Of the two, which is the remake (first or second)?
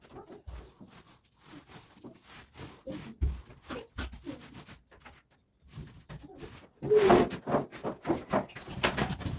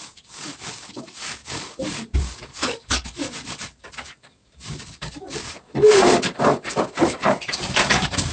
second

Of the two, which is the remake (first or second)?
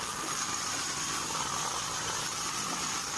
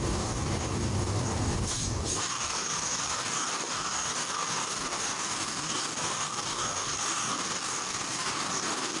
second